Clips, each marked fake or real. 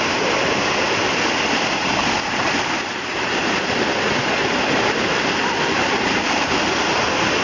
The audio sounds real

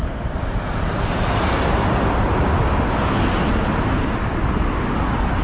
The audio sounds real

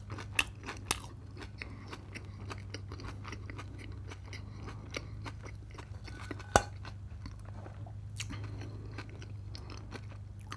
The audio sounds real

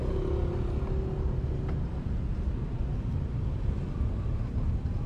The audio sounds real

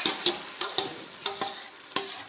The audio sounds real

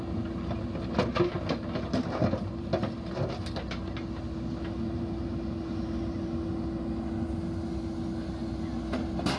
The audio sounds real